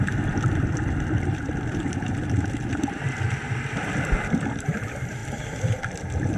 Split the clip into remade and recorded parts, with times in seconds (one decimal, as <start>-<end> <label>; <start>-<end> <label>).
0.0-5.2 remade; 5.2-6.4 recorded

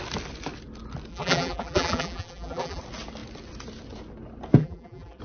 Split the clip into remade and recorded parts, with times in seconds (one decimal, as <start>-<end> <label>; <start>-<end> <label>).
0.0-1.1 recorded; 1.1-2.8 remade; 2.8-4.6 recorded; 4.6-5.2 remade

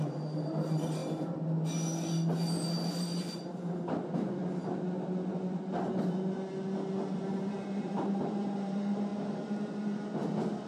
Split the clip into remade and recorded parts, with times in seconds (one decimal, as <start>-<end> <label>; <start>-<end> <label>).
0.0-1.0 remade; 1.0-2.9 recorded; 2.9-4.4 remade; 4.4-7.5 recorded; 7.5-9.1 remade; 9.1-10.7 recorded

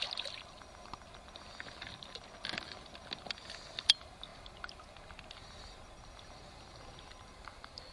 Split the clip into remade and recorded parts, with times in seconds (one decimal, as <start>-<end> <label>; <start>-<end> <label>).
0.0-7.9 recorded

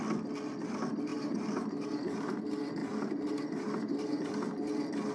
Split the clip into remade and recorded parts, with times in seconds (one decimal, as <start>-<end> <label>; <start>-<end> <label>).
0.0-1.1 recorded; 1.1-2.4 remade; 2.4-2.8 recorded; 2.8-4.2 remade; 4.2-5.1 recorded